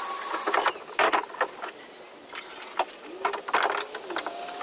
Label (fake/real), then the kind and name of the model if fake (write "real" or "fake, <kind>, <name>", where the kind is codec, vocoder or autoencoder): real